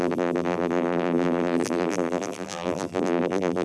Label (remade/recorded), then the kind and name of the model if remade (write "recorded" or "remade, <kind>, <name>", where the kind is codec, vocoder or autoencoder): remade, vocoder, BigVGAN v2